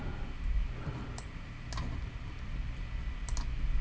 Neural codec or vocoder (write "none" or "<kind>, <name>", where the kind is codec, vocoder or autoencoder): none